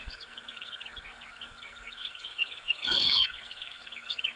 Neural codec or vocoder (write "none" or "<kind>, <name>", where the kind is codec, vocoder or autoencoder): codec, SNAC